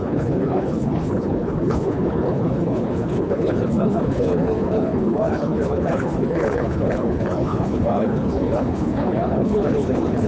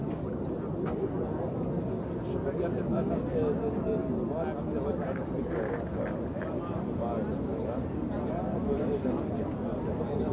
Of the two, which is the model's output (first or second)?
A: first